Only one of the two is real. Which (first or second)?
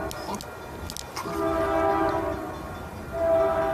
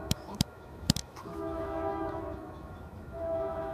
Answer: first